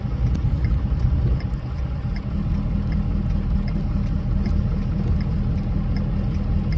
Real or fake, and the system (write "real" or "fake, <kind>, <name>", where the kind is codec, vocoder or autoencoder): real